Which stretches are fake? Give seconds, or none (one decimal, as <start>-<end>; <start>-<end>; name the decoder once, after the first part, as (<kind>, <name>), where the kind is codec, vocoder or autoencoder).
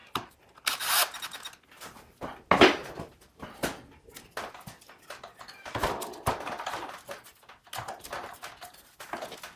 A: none